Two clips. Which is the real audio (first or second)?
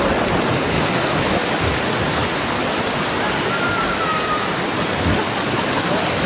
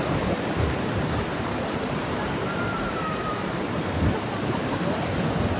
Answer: first